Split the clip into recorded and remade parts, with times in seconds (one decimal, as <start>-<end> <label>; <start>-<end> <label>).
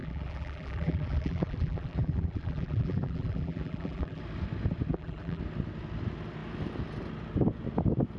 0.0-4.2 remade; 4.2-4.9 recorded; 4.9-5.4 remade; 5.4-8.2 recorded